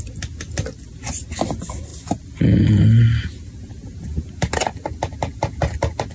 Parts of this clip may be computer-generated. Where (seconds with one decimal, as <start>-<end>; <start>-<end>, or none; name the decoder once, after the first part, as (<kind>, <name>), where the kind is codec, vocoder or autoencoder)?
none